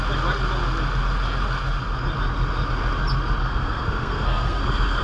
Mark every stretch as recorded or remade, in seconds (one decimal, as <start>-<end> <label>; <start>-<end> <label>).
0.0-3.4 recorded; 3.4-4.6 remade; 4.6-5.0 recorded